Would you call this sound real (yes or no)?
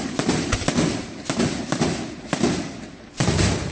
yes